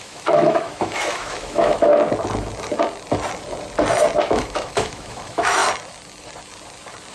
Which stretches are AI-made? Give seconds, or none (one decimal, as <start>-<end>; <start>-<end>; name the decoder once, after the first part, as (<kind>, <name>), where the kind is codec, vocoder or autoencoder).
0.0-1.9 (autoencoder, DAC-VAE); 4.2-5.6

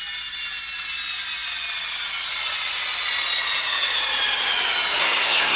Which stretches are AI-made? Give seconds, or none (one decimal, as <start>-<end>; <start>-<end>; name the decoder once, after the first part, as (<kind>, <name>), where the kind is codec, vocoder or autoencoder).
5.0-5.6 (codec, SNAC)

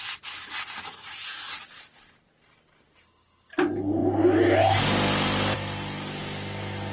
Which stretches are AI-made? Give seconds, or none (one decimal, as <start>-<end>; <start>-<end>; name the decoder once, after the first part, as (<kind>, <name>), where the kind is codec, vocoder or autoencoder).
0.9-1.5 (autoencoder, DAC-VAE)

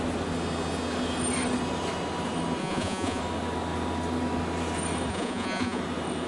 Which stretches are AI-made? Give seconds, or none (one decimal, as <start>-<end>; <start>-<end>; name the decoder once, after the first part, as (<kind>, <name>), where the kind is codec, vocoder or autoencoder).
2.6-3.2 (vocoder, Vocos); 5.1-5.8

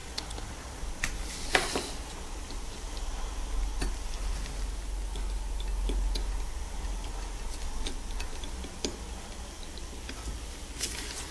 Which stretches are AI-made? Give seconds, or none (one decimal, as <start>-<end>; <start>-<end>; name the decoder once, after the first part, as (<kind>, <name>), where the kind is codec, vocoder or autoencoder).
none

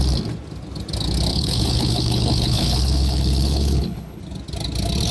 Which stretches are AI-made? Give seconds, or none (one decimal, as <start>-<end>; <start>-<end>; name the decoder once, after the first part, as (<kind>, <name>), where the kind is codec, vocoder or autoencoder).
1.3-4.2 (codec, HILCodec)